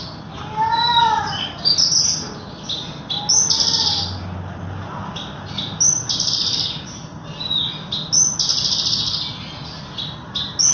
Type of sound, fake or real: real